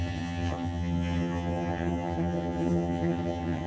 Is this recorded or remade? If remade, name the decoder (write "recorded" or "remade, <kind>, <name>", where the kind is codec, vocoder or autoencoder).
remade, vocoder, HiFi-GAN